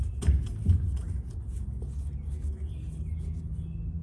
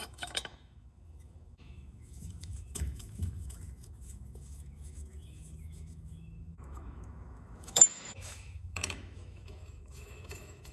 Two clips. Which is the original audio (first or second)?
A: first